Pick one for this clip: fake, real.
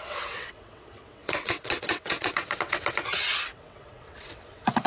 fake